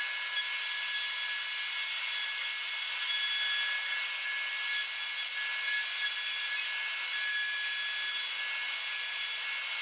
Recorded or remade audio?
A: recorded